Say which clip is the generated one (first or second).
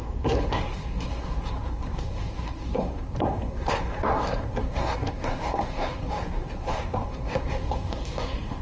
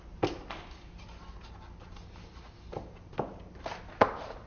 first